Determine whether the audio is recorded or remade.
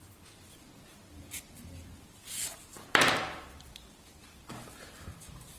remade